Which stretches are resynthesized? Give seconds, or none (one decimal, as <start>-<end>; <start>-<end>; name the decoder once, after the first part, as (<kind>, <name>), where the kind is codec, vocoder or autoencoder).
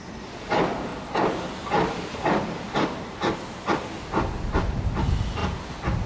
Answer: none